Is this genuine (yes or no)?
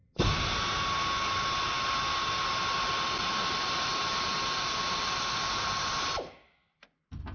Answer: yes